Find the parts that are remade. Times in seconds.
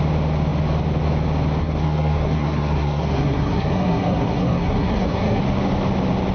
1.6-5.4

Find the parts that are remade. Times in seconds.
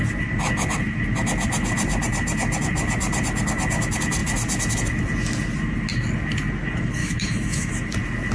7.0-7.7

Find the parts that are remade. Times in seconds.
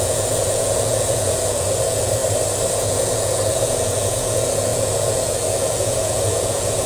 0.0-2.2; 2.7-6.9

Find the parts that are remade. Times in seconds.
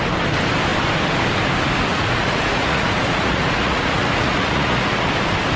1.9-5.1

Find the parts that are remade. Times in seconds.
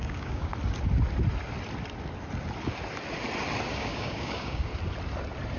0.0-0.5; 3.7-4.7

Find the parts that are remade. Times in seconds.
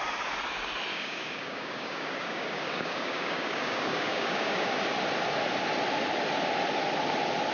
0.9-4.7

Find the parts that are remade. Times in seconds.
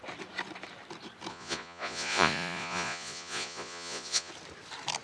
1.3-4.3